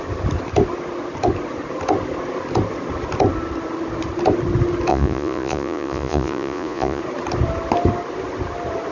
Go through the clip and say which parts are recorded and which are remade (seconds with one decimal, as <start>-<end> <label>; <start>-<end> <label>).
0.0-4.9 recorded; 4.9-7.0 remade; 7.0-8.9 recorded